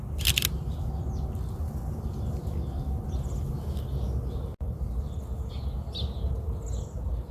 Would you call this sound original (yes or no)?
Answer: yes